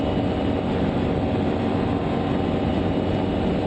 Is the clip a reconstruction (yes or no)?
no